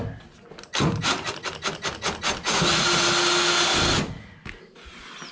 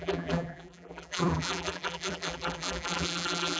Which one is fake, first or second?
second